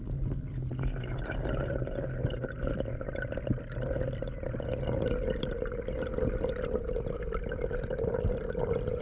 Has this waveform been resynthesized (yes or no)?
no